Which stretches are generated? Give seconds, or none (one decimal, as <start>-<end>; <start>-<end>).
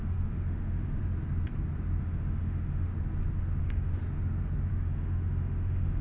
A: 0.0-1.0; 2.0-2.9; 3.6-4.0; 4.7-6.0